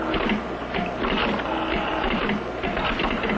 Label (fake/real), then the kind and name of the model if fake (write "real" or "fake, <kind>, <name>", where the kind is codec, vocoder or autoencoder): real